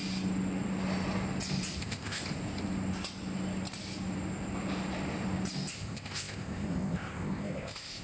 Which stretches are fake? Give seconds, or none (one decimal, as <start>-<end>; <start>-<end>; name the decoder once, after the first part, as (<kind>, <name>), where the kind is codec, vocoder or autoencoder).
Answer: 1.8-2.2 (codec, ZipCodec); 5.7-8.0